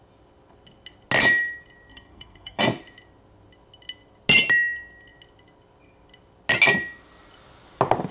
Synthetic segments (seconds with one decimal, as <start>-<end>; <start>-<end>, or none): 1.9-2.6